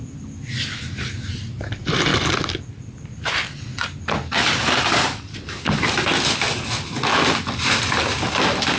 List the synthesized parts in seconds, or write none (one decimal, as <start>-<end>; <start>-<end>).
none